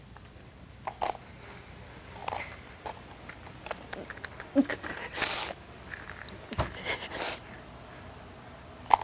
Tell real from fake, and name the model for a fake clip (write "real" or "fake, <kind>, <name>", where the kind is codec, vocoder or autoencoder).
real